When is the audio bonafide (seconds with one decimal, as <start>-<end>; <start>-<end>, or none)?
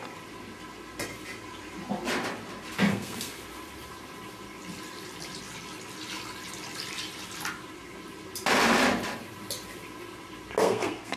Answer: 0.0-2.9; 3.4-10.6